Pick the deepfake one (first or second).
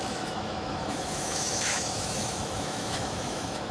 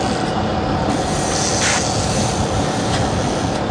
first